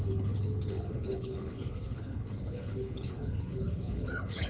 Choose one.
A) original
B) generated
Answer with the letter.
B